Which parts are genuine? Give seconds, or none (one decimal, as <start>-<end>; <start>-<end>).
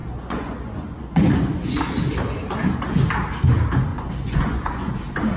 1.8-3.9; 4.9-5.4